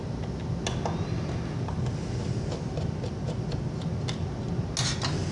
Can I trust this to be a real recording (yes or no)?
yes